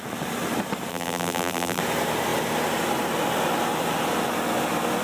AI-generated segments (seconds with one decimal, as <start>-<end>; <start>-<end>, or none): 0.9-1.8